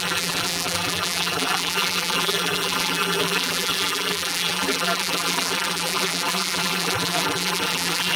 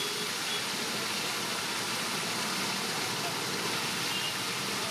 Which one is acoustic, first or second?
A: second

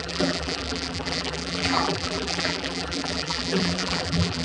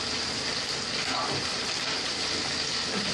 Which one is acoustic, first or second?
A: second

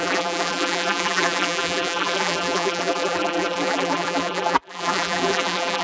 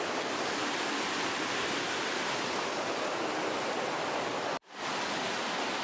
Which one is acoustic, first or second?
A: second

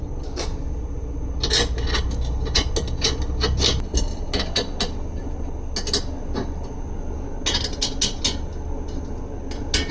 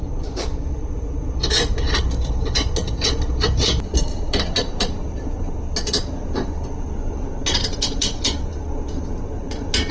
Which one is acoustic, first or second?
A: first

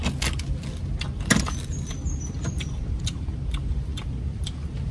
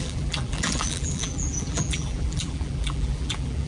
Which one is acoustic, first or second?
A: first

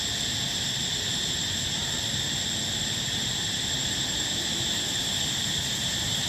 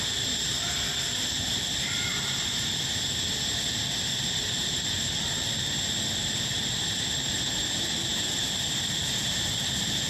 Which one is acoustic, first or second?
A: first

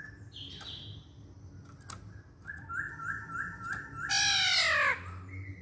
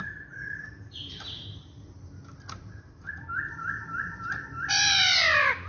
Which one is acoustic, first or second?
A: first